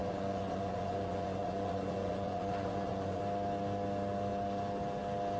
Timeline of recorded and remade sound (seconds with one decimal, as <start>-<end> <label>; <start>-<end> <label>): 0.0-3.2 remade; 3.2-5.4 recorded